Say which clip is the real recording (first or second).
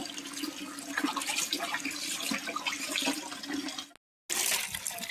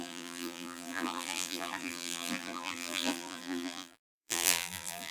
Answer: first